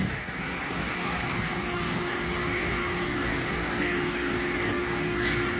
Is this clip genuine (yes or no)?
no